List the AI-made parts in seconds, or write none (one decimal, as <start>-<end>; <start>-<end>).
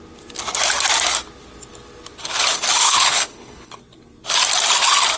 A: 2.8-3.8